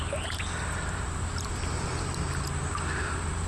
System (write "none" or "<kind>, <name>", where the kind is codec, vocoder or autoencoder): none